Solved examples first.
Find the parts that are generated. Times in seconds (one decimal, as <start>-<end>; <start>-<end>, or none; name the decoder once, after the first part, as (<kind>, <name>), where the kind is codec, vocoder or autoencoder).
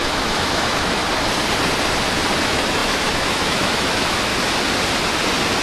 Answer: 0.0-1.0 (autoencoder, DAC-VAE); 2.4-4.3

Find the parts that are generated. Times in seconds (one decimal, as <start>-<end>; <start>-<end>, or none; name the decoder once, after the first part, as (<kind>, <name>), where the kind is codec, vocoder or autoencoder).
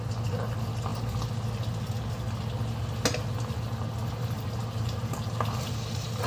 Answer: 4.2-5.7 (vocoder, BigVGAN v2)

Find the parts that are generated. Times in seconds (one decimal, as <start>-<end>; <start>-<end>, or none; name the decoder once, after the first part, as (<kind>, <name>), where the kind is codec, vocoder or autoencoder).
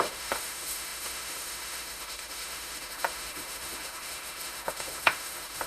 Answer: 0.0-5.7 (autoencoder, DAC-VAE)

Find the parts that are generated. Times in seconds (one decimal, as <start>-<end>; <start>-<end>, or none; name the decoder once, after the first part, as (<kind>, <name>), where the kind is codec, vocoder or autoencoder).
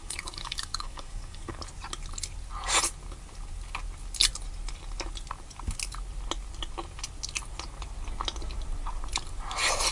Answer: 0.0-1.5 (codec, DAC)